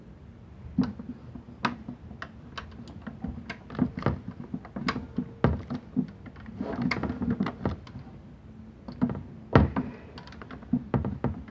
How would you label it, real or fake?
real